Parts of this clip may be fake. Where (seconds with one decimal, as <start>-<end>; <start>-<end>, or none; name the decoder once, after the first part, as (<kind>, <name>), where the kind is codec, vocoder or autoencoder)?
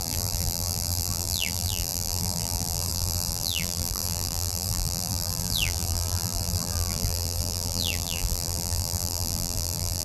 0.0-10.0 (vocoder, BigVGAN v2)